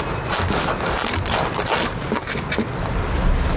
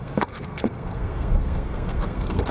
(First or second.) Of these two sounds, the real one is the first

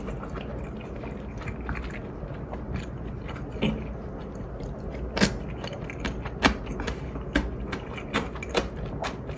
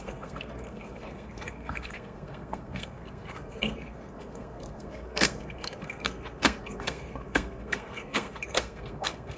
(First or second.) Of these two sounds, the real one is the first